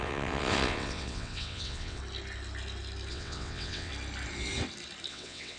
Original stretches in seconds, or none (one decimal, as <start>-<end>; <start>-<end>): 2.0-3.1; 3.9-5.1